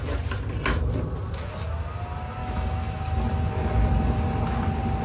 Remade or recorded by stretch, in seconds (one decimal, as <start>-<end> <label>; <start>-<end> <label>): 0.0-2.4 recorded; 2.4-3.0 remade; 3.0-5.0 recorded